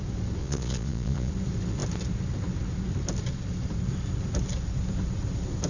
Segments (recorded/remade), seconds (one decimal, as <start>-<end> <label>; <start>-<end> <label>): 0.0-0.4 recorded; 0.4-1.3 remade; 1.3-5.7 recorded